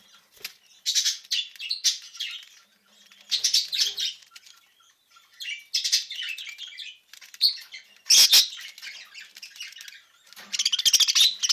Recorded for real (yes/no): yes